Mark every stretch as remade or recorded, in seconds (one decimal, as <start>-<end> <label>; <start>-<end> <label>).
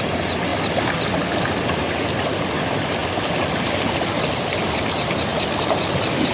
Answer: 0.0-6.3 recorded